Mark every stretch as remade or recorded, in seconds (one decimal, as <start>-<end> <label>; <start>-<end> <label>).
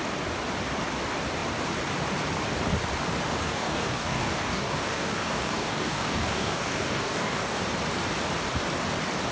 0.0-3.4 recorded; 3.4-7.6 remade; 7.6-9.3 recorded